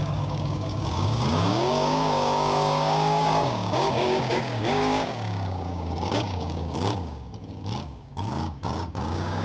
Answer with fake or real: fake